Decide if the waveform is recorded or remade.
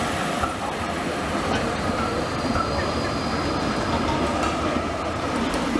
recorded